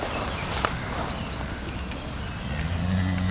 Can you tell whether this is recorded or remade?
recorded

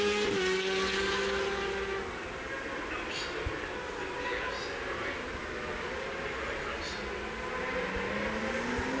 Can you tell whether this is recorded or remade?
recorded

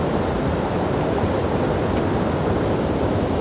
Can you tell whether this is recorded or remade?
recorded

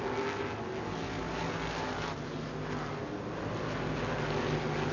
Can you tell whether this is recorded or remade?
recorded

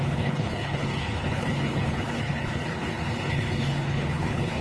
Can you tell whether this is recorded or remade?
remade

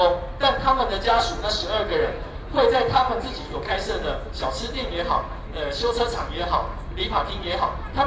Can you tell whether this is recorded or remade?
recorded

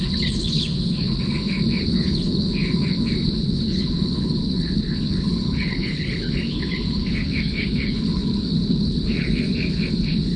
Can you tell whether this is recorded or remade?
remade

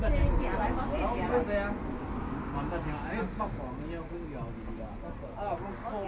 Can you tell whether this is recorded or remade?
recorded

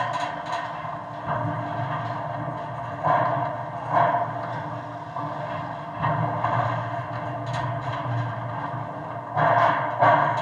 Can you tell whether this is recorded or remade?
recorded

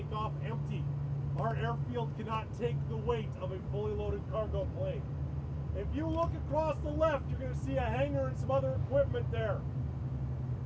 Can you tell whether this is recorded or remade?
recorded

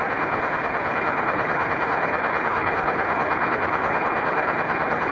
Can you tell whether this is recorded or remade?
remade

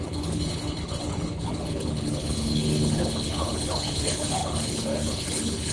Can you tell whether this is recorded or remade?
remade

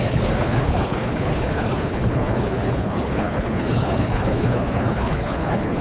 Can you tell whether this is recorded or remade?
remade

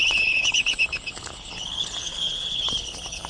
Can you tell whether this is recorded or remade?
remade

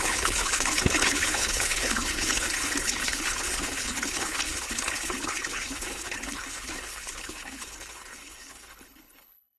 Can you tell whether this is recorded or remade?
remade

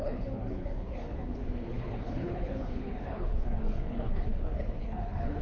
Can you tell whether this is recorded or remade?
remade